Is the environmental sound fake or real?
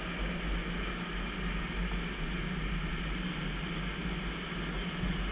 real